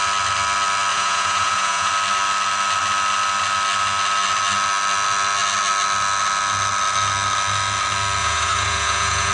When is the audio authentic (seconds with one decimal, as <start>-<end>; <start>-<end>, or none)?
0.0-0.9; 1.9-8.2